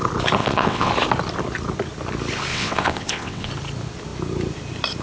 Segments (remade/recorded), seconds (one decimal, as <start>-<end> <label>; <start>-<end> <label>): 0.0-0.4 recorded; 0.4-0.9 remade; 0.9-2.5 recorded; 2.5-3.5 remade; 3.5-5.0 recorded

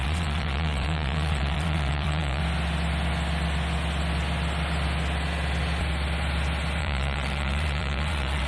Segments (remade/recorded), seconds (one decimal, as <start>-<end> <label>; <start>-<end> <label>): 0.0-2.4 remade; 2.4-6.8 recorded; 6.8-8.5 remade

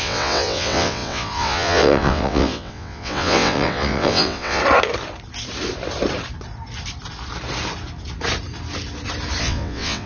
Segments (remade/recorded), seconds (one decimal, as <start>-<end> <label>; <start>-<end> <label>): 0.0-4.6 remade; 4.6-9.4 recorded; 9.4-10.1 remade

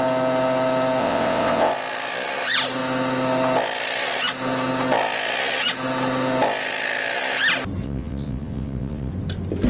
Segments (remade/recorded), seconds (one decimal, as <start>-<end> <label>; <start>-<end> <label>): 0.0-1.0 recorded; 1.0-1.7 remade; 1.7-7.8 recorded; 7.8-9.1 remade; 9.1-9.7 recorded

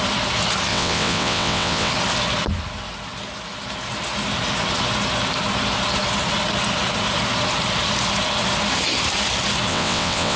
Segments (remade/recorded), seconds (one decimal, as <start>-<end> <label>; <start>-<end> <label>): 0.0-0.7 recorded; 0.7-1.9 remade; 1.9-9.7 recorded; 9.7-10.4 remade

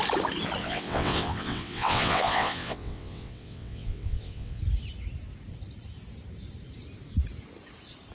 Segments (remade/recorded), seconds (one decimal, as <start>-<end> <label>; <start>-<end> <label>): 0.0-0.6 recorded; 0.6-4.6 remade; 4.6-8.1 recorded

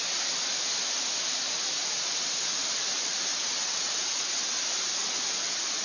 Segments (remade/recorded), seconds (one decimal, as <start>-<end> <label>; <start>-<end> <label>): 0.0-3.3 recorded; 3.3-3.9 remade; 3.9-5.8 recorded

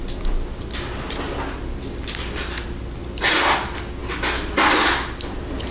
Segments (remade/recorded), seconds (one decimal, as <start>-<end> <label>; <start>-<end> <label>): 0.0-5.7 recorded